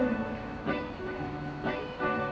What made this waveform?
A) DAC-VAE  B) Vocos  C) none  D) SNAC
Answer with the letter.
A